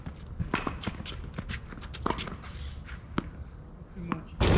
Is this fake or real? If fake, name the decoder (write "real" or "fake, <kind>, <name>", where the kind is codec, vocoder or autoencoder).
real